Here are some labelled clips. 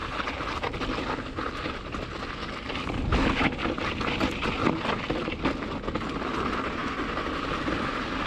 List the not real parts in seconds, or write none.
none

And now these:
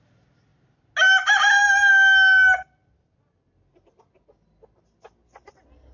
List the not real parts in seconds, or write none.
none

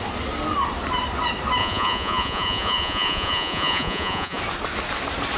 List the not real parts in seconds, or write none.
1.6-4.4 (vocoder, Vocos)

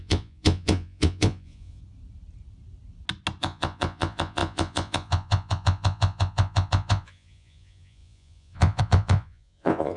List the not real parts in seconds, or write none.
0.0-1.8 (vocoder, Vocos); 3.4-10.0

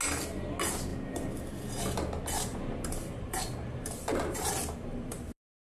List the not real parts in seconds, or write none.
2.5-4.5 (vocoder, BigVGAN v2); 4.9-5.8

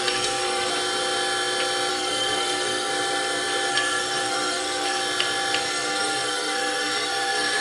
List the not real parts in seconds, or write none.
0.0-0.7 (codec, SNAC); 1.9-2.9; 3.7-5.0; 5.6-7.6

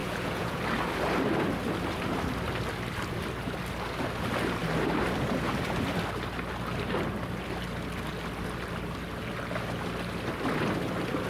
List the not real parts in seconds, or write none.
0.0-0.6 (vocoder, Vocos)